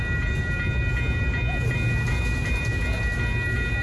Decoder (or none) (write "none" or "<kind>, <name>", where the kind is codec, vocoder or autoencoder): none